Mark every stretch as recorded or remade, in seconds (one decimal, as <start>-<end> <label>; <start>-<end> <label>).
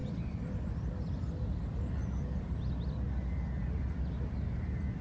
0.0-5.0 recorded